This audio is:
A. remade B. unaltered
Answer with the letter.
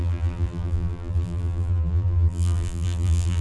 A